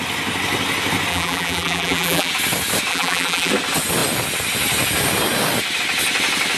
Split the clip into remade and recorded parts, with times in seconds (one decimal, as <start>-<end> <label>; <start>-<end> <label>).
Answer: 0.0-1.1 recorded; 1.1-2.3 remade; 2.3-2.9 recorded; 2.9-3.5 remade; 3.5-6.6 recorded